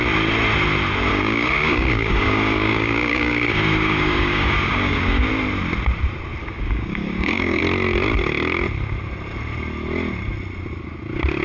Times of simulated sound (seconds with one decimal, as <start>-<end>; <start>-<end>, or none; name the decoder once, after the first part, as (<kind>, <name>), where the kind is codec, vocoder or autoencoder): 1.1-5.3 (codec, DAC); 6.4-7.6